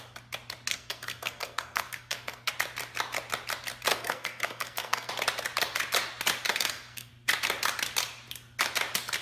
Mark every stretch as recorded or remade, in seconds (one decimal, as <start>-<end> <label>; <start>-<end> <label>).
0.0-0.7 recorded; 0.7-2.5 remade; 2.5-3.9 recorded; 3.9-5.1 remade; 5.1-6.5 recorded; 6.5-7.1 remade; 7.1-9.2 recorded